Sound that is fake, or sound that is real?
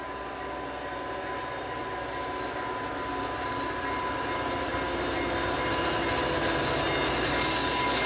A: real